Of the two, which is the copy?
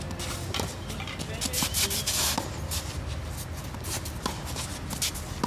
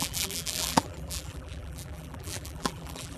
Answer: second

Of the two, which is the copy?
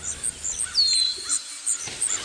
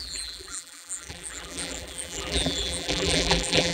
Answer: second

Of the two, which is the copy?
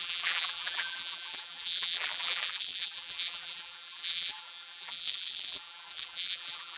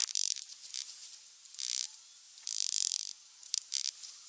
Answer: first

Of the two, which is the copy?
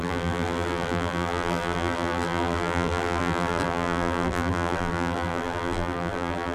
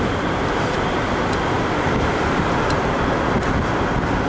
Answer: first